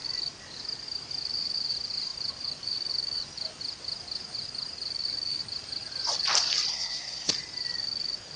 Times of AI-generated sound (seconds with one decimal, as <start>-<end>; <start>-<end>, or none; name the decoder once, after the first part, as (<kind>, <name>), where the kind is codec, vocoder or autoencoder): 6.7-7.3 (codec, SNAC)